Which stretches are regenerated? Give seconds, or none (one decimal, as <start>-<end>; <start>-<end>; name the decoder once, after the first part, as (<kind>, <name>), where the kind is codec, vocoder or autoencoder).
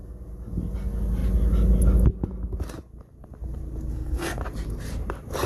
3.9-4.4 (codec, SNAC)